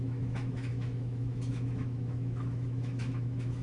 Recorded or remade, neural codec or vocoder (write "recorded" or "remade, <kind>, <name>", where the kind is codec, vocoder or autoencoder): remade, autoencoder, DAC-VAE